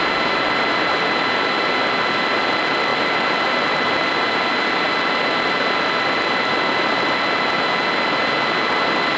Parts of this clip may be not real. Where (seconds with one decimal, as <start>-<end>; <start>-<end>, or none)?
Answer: none